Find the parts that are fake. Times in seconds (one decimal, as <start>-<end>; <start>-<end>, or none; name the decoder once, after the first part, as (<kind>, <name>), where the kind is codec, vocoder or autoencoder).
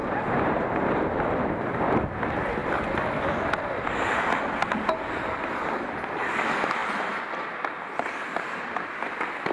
none